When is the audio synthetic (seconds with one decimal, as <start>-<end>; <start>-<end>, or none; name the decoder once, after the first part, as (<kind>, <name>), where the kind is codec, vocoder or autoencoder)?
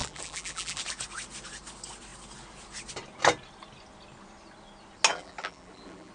0.0-0.8 (vocoder, BigVGAN v2); 5.1-6.1